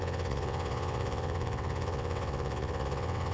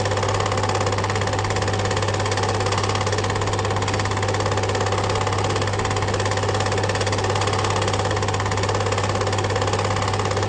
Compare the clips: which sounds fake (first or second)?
first